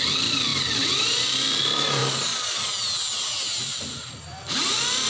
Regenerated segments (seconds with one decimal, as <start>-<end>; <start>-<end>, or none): none